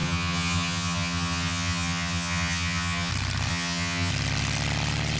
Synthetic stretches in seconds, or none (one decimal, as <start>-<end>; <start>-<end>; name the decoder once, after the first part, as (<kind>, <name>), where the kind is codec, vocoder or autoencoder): 0.0-3.1 (vocoder, HiFi-GAN); 3.5-4.1